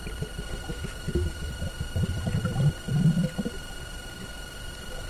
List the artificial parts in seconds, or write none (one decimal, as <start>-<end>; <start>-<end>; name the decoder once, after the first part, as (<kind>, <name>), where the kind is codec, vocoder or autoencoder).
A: 0.7-1.5 (autoencoder, DAC-VAE)